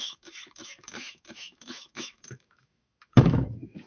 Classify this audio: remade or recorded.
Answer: remade